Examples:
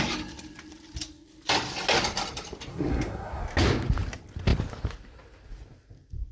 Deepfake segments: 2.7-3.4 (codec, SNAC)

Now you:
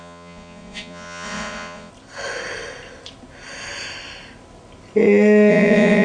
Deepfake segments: 0.0-1.9 (vocoder, Vocos); 5.5-6.0

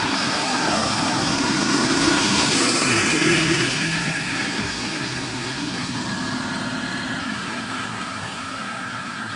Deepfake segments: 0.0-6.0 (codec, SNAC); 7.2-9.4

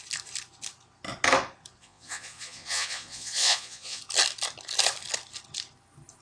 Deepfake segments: 1.8-4.0 (vocoder, Vocos)

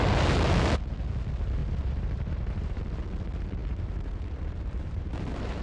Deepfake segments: 1.6-2.8 (vocoder, BigVGAN v2); 3.6-5.6

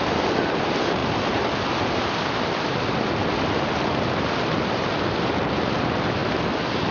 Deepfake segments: none